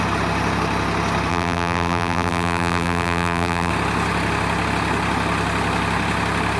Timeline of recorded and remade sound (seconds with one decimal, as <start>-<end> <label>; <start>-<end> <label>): 0.0-1.3 recorded; 1.3-3.7 remade; 3.7-6.6 recorded